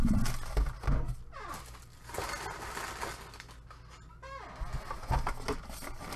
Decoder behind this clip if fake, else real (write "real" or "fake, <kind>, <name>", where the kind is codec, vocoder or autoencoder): real